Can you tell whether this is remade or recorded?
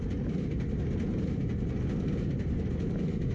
recorded